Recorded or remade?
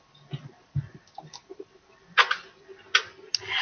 recorded